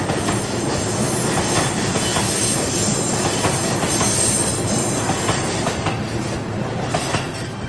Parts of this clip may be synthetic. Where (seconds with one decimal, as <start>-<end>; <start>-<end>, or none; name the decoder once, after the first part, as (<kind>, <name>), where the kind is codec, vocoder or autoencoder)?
none